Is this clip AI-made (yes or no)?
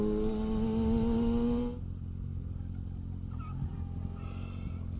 no